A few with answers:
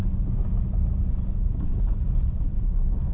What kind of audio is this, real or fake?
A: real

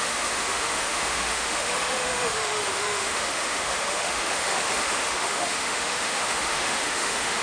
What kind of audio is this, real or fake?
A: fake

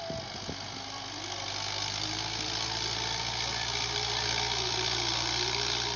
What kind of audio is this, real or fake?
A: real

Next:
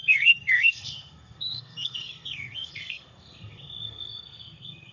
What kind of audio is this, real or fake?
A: fake